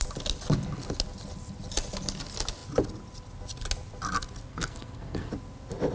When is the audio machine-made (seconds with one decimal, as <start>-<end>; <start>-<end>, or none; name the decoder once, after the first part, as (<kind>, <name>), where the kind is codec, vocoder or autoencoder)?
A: 4.5-5.3 (codec, SNAC)